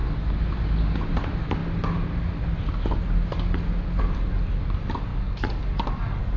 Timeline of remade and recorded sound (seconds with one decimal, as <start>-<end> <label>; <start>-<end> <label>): 0.0-5.1 recorded; 5.1-6.4 remade

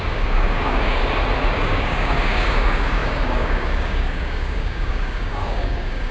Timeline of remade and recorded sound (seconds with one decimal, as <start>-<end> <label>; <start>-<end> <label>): 0.0-1.0 remade; 1.0-1.5 recorded; 1.5-6.1 remade